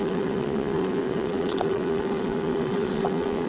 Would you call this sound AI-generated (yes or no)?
yes